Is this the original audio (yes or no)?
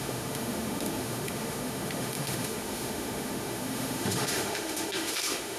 no